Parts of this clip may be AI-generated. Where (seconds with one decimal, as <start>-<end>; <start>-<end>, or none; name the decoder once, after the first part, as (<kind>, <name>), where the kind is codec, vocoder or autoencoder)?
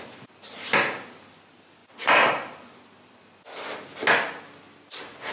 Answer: none